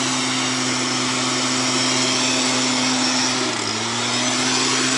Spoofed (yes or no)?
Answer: no